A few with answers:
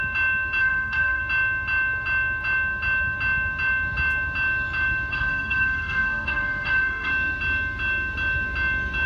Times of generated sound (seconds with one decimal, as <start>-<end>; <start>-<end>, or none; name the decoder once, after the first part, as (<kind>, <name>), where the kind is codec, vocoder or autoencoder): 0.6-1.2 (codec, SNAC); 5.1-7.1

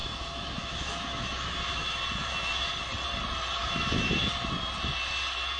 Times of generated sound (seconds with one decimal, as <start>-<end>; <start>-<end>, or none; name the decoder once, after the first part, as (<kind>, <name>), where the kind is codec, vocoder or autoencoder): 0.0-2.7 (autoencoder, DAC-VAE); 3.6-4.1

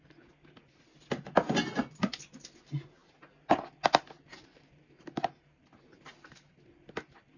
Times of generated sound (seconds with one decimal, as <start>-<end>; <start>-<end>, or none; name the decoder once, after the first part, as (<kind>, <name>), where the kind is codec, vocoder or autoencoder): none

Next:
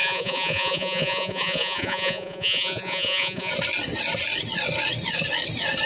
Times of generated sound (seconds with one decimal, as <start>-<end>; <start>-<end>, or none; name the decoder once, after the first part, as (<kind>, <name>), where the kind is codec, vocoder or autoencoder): 0.0-3.5 (vocoder, Vocos)